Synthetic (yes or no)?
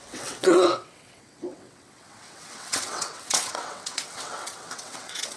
yes